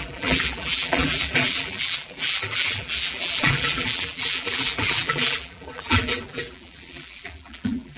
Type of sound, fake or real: fake